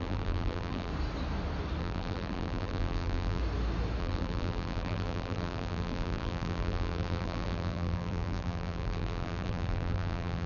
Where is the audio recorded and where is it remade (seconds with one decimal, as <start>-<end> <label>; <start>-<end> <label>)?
0.0-0.9 remade; 0.9-1.8 recorded; 1.8-3.4 remade; 3.4-4.0 recorded; 4.0-10.5 remade